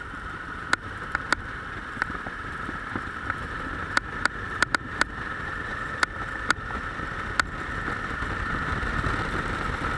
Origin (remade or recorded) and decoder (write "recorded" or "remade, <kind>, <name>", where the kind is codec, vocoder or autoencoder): remade, vocoder, BigVGAN v2